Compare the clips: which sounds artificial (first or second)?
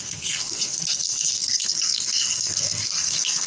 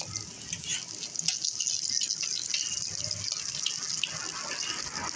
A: first